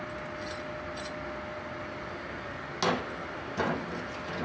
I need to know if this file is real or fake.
real